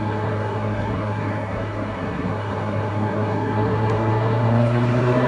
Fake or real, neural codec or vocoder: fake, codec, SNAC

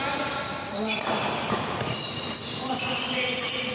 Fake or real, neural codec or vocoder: real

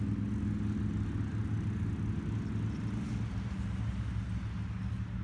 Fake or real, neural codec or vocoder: real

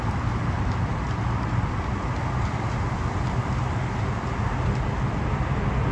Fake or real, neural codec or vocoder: real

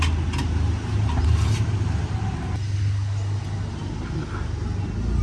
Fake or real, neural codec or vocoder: real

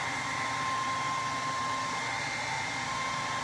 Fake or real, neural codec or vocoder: real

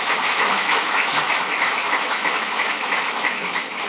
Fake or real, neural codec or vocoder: fake, autoencoder, DAC-VAE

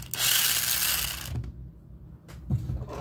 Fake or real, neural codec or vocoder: real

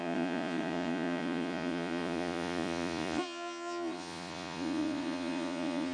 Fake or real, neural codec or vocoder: fake, vocoder, Vocos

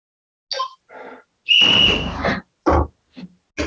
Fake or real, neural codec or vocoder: real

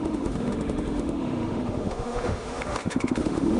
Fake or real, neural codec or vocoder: fake, autoencoder, DAC-VAE